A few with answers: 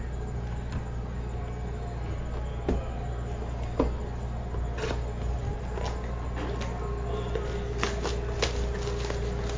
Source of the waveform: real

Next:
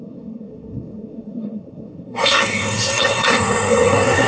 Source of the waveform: fake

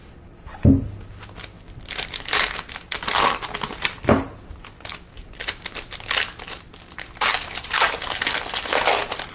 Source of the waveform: real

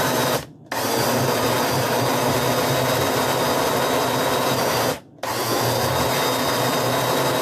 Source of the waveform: real